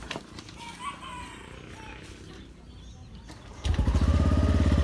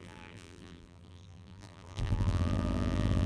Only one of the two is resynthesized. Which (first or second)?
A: second